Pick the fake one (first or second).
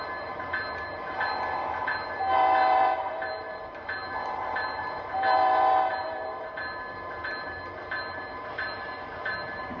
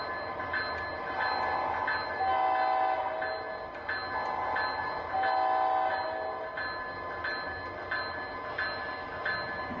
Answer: first